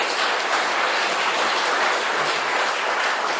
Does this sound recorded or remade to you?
recorded